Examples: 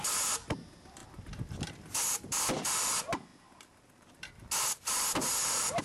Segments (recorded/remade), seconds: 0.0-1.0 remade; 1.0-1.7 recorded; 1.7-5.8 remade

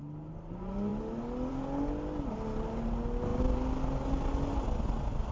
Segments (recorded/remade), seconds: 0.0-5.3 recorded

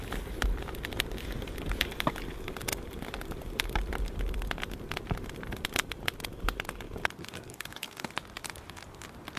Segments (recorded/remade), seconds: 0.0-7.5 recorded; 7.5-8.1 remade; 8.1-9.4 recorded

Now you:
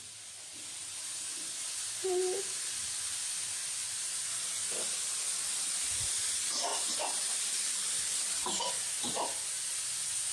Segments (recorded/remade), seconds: 0.0-6.7 recorded; 6.7-8.7 remade; 8.7-10.3 recorded